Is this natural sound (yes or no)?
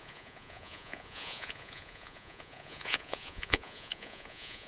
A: no